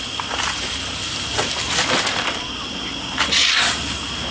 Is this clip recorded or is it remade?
recorded